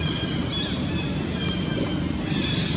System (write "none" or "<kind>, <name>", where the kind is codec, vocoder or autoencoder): none